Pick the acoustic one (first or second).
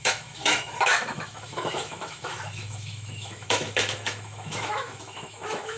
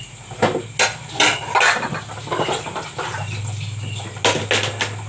second